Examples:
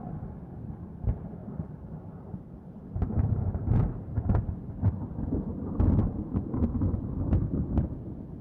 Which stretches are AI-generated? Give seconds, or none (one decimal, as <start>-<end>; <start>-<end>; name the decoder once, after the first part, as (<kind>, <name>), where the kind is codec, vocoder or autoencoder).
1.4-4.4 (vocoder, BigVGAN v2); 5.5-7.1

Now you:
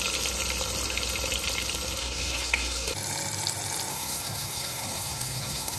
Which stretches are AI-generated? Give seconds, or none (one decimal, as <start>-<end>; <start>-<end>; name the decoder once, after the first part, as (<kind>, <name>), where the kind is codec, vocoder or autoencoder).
2.0-2.9 (codec, SNAC); 3.9-5.8

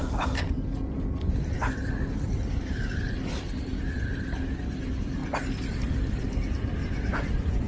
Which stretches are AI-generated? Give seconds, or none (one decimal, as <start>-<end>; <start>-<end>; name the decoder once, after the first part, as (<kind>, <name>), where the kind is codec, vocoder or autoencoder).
6.8-7.7 (vocoder, Vocos)

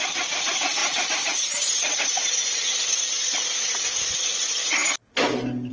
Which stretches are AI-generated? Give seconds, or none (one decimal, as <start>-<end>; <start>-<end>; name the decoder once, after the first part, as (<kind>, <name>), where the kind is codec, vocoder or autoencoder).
none